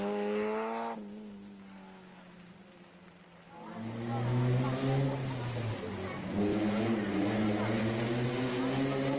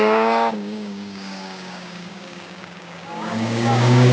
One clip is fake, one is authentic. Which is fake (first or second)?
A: second